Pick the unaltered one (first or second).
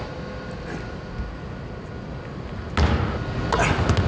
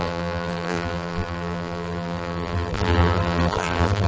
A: first